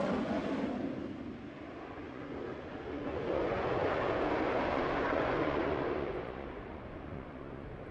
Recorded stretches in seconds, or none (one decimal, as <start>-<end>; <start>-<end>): 0.4-1.9